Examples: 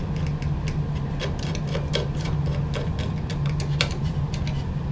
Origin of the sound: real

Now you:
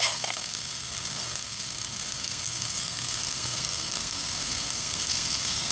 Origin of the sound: fake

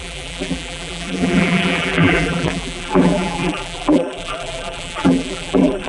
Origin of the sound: fake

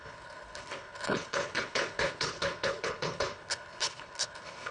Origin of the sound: fake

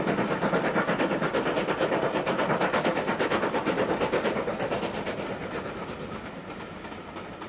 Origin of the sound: real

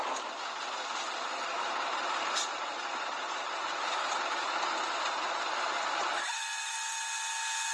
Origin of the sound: real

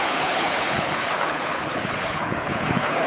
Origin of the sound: fake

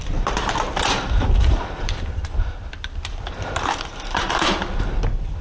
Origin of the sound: fake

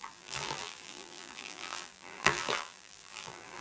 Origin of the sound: fake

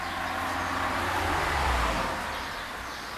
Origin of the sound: real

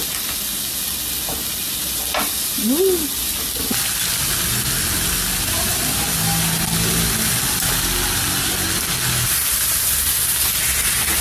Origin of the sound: real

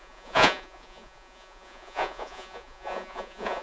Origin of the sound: fake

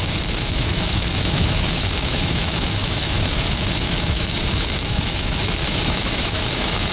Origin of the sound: fake